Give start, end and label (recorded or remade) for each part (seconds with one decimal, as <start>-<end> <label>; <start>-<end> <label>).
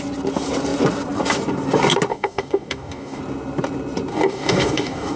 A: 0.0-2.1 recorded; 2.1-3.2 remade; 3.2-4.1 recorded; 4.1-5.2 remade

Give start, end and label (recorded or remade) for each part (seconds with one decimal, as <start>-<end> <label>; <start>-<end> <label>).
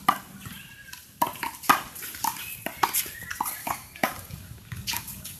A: 0.0-3.6 recorded; 3.6-5.4 remade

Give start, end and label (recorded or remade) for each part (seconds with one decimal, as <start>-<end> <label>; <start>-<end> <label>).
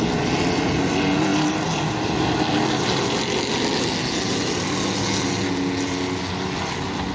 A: 0.0-7.1 recorded